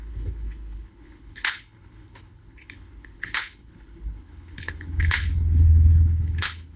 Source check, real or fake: fake